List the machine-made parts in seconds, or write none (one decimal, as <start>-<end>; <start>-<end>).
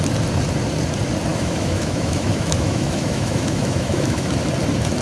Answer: 1.3-4.3